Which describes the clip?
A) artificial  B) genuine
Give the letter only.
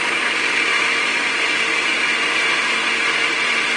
A